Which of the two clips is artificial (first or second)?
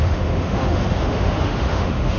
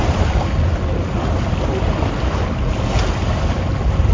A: first